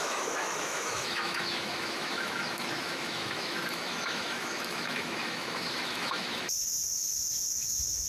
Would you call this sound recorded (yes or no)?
no